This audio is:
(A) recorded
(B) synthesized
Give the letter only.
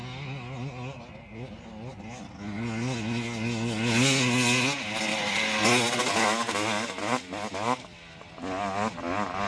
A